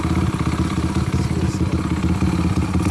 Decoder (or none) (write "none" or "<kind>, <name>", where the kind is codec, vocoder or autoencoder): none